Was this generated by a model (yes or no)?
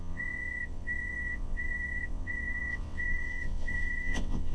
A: yes